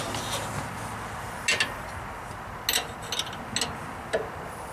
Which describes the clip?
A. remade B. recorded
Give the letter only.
B